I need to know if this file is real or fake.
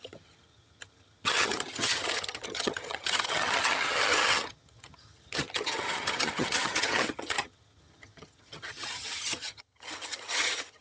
fake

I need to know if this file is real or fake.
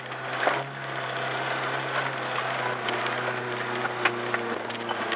real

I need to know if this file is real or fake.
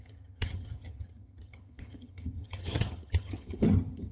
fake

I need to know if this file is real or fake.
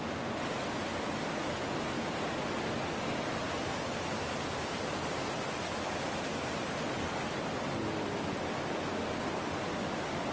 real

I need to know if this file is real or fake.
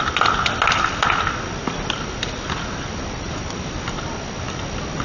real